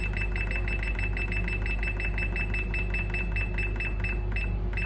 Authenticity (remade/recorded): recorded